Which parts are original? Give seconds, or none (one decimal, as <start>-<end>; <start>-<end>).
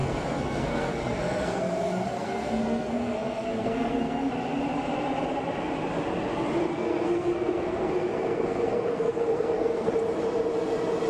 4.3-6.6; 9.9-11.1